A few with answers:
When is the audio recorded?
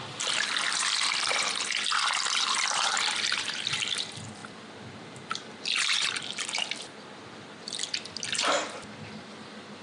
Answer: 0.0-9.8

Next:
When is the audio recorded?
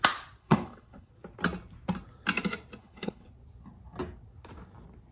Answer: 0.0-0.4; 1.1-2.8; 3.3-5.1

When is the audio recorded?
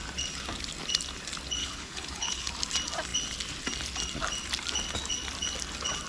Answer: 0.0-1.6; 2.5-6.1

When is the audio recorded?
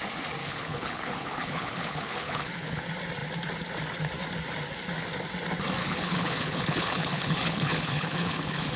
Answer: 0.0-0.4; 2.8-5.8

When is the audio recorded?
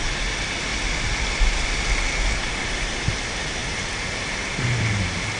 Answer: 0.0-5.4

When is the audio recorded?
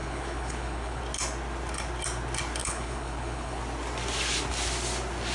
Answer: 1.0-2.6; 3.6-5.3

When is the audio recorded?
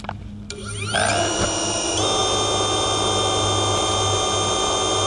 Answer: 0.0-5.1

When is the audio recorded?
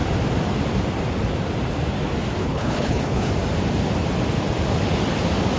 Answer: 0.0-2.4; 3.3-5.6